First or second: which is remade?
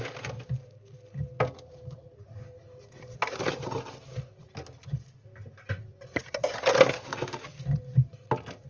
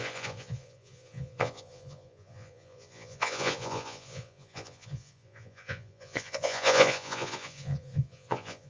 second